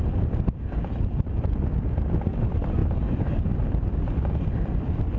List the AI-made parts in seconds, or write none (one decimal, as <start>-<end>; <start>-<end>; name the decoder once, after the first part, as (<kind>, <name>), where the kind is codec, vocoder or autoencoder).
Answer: none

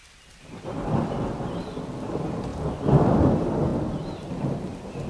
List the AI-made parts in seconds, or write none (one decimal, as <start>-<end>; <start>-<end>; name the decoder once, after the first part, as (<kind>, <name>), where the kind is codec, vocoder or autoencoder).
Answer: 0.0-1.0 (vocoder, BigVGAN v2); 2.5-3.3

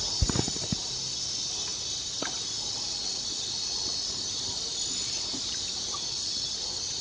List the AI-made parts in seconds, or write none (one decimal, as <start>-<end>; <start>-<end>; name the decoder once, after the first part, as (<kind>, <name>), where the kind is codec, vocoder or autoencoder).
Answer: none

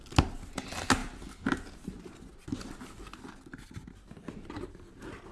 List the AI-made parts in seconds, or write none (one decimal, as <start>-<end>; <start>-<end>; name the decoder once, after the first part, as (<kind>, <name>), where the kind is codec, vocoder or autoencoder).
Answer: none